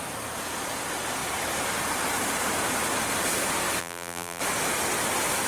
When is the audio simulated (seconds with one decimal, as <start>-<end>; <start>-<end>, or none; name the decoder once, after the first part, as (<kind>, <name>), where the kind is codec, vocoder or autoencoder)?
3.8-4.4 (vocoder, BigVGAN v2)